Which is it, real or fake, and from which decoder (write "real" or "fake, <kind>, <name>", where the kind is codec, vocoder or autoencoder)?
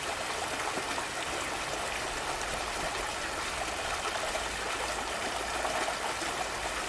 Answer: real